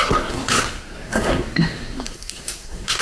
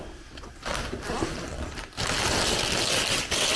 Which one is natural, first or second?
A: second